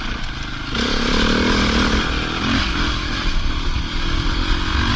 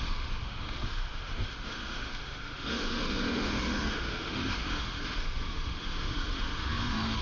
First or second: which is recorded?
first